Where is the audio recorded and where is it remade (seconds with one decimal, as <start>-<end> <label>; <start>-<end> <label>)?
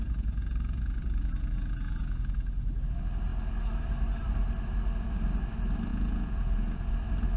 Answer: 0.0-2.7 remade; 2.7-5.9 recorded; 5.9-6.9 remade; 6.9-7.4 recorded